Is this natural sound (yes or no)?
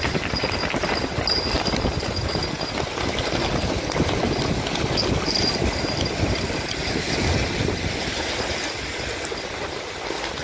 yes